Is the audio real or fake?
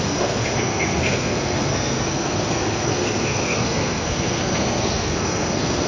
fake